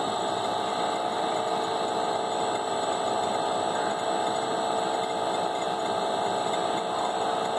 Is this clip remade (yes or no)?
no